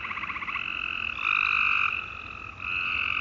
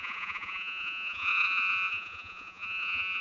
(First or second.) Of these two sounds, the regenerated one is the second